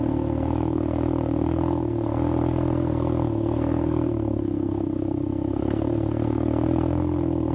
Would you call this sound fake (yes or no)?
yes